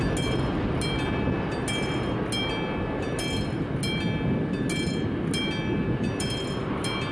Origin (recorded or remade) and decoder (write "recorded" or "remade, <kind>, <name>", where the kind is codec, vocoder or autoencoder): recorded